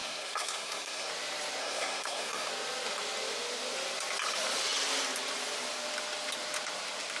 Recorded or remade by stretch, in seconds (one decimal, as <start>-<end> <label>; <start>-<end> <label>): 0.0-1.1 remade; 1.1-1.6 recorded; 1.6-2.5 remade; 2.5-7.2 recorded